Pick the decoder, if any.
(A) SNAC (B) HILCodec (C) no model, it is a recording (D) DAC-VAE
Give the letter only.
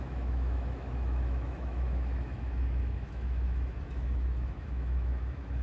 D